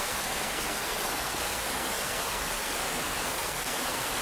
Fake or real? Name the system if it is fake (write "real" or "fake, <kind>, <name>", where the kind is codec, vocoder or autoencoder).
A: fake, codec, SNAC